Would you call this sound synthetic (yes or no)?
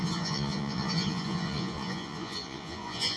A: yes